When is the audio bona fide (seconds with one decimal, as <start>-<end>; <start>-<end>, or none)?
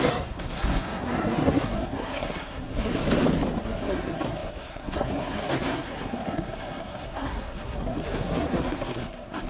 2.9-3.6